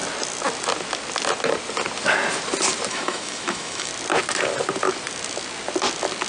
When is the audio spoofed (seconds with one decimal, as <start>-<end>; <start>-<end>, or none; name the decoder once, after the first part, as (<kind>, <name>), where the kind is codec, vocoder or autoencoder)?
2.9-3.9 (autoencoder, DAC-VAE)